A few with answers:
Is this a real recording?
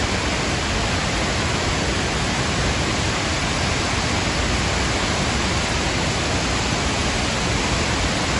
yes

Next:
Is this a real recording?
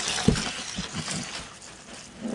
yes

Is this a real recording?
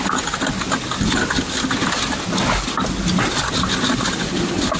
yes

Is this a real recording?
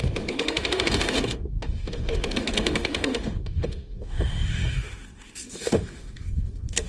no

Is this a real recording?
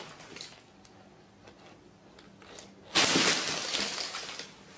yes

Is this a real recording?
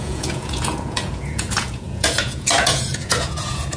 no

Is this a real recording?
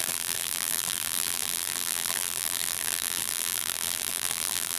no